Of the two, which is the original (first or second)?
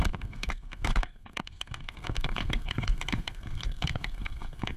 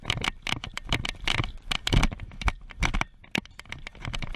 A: second